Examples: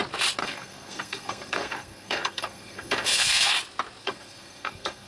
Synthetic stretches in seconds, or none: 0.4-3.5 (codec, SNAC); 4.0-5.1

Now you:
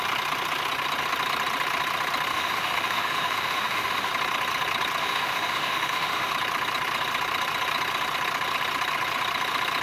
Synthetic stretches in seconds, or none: 2.3-4.1 (autoencoder, DAC-VAE); 5.0-6.3

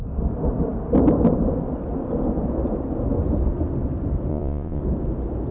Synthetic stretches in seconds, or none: 4.3-4.8 (vocoder, Vocos)

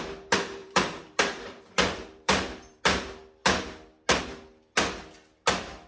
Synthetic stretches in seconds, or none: 0.6-2.8 (vocoder, BigVGAN v2)

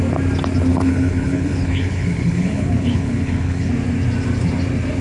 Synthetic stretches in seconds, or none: 0.7-3.7 (codec, HILCodec)

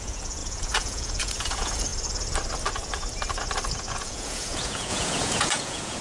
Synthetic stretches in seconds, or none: 0.0-1.9 (vocoder, Vocos); 3.7-6.0

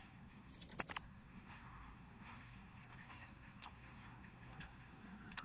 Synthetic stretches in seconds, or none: 0.0-0.5 (codec, SNAC); 1.0-5.4

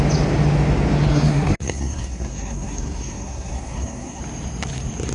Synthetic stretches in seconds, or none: 1.1-4.2 (codec, SNAC)